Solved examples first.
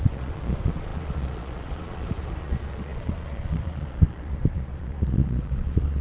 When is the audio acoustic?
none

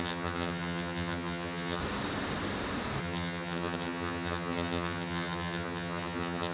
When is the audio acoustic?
1.8-3.0

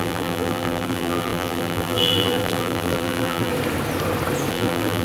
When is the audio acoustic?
3.5-4.5

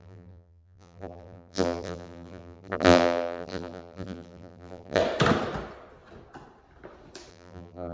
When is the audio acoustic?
5.0-7.3

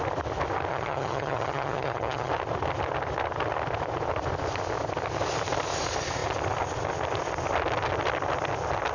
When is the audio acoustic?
0.0-0.7; 2.3-8.9

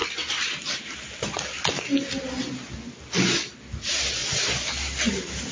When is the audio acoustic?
0.0-5.5

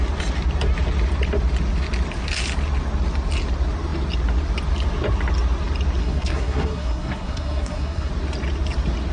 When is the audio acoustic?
0.0-6.0; 8.1-9.1